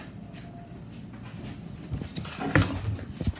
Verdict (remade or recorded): recorded